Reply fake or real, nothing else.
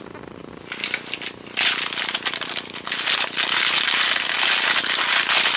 real